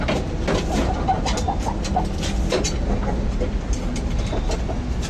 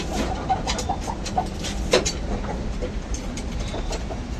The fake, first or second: second